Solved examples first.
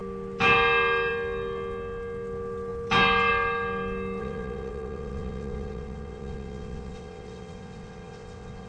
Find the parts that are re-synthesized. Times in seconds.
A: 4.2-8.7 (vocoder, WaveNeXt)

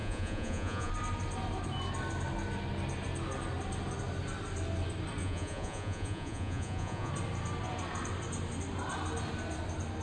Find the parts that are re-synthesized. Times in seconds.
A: 0.0-0.9 (vocoder, Vocos); 5.2-7.1